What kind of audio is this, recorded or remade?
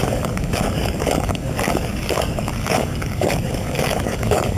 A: remade